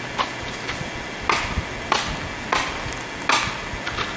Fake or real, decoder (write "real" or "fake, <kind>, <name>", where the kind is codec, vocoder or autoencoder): real